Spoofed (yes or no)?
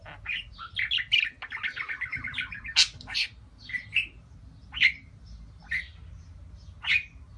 no